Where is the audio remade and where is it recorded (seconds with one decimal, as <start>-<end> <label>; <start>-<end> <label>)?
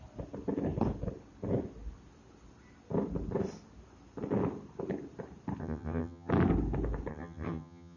0.0-5.6 recorded; 5.6-6.3 remade; 6.3-7.1 recorded; 7.1-8.0 remade